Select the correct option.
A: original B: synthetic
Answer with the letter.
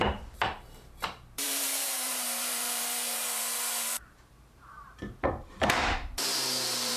B